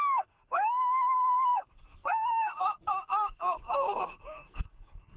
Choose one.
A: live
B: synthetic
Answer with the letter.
B